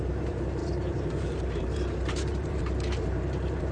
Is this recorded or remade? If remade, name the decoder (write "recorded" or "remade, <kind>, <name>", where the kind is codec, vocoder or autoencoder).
remade, vocoder, BigVGAN v2